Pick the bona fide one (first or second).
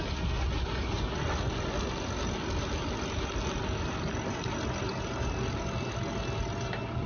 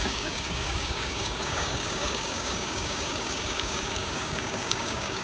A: first